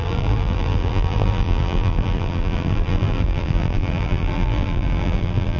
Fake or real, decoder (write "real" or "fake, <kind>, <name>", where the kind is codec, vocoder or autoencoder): fake, vocoder, BigVGAN v2